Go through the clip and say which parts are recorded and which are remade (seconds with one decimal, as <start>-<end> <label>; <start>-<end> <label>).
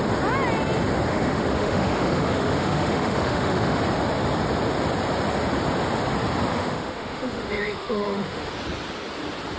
0.0-1.1 recorded; 1.1-3.8 remade; 3.8-6.5 recorded; 6.5-8.5 remade; 8.5-9.6 recorded